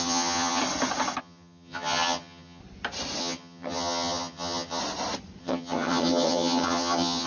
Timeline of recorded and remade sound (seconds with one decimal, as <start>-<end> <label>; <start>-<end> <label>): 0.0-0.6 remade; 0.6-1.2 recorded; 1.2-2.6 remade; 2.6-3.2 recorded; 3.2-4.8 remade; 4.8-5.4 recorded; 5.4-7.3 remade